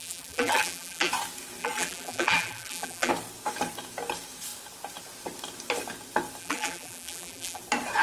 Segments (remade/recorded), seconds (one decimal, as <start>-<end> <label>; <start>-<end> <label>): 0.0-1.1 remade; 1.1-1.6 recorded; 1.6-3.1 remade; 3.1-6.4 recorded; 6.4-7.6 remade; 7.6-8.0 recorded